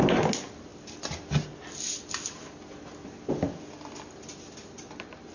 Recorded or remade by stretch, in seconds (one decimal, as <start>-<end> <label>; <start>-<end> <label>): 0.0-5.3 recorded